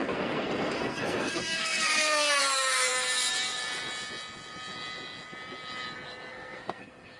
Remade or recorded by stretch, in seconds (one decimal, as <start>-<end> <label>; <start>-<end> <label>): 0.0-2.4 remade; 2.4-6.3 recorded; 6.3-7.2 remade